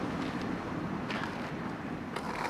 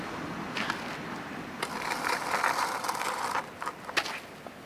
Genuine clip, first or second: second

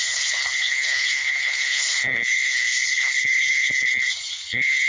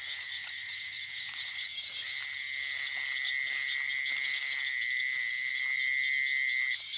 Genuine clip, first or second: second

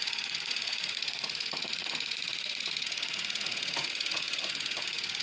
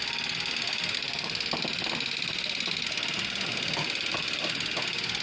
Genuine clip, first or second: second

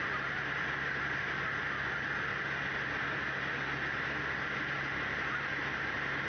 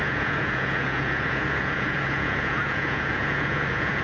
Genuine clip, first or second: first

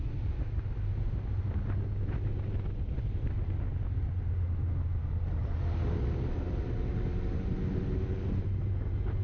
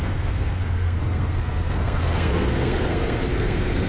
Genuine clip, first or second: first